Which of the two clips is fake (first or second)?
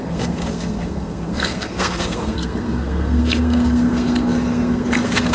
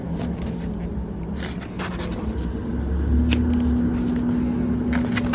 first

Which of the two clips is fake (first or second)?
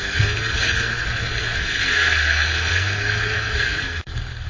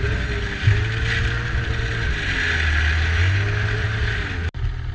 first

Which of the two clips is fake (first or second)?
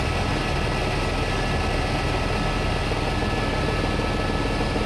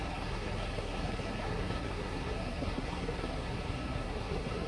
second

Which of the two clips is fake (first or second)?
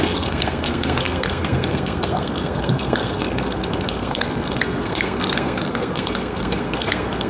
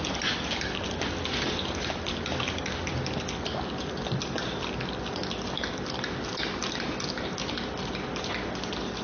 first